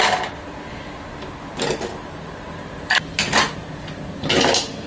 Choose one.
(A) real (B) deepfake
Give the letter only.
A